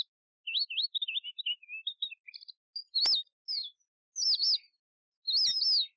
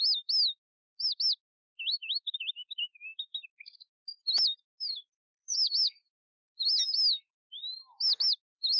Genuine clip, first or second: first